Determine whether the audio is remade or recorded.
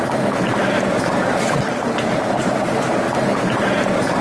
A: recorded